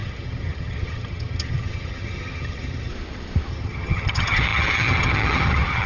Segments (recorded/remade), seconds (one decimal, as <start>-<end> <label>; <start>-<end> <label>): 0.0-2.9 remade; 2.9-3.5 recorded; 3.5-5.9 remade